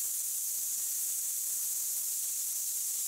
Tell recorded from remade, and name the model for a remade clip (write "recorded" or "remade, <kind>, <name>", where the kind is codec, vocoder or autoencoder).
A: recorded